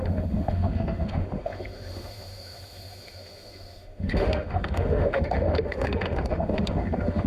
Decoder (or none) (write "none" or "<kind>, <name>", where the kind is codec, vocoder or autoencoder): autoencoder, DAC-VAE